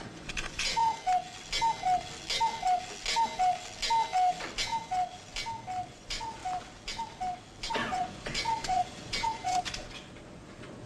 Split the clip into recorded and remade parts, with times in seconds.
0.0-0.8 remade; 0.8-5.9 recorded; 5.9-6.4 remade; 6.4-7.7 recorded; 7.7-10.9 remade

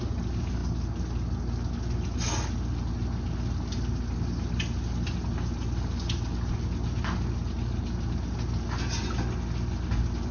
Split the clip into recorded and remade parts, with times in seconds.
0.0-10.3 recorded

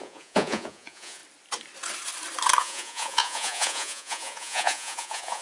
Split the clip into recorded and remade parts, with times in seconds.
0.0-1.2 remade; 1.2-2.6 recorded; 2.6-5.4 remade

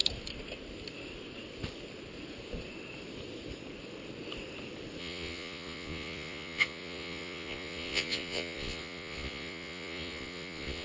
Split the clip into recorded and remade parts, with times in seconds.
0.0-5.0 recorded; 5.0-10.8 remade

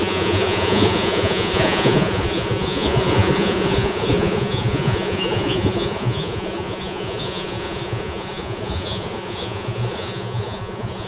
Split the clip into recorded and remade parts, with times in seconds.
0.0-11.1 remade